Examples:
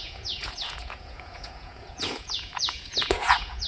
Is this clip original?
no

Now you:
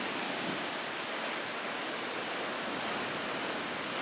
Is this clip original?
yes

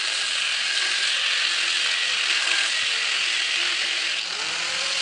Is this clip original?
yes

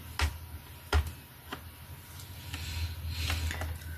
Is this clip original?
yes